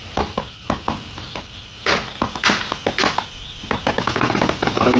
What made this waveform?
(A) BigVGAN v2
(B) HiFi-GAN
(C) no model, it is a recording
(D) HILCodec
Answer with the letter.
C